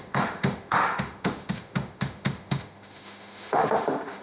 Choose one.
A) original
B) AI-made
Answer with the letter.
B